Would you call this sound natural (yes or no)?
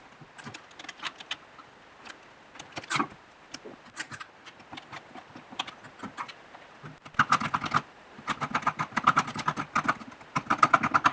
yes